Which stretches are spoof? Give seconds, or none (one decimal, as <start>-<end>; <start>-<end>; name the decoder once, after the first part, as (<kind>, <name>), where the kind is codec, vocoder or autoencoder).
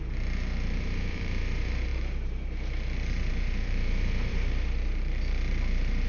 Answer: 0.0-6.1 (vocoder, BigVGAN v2)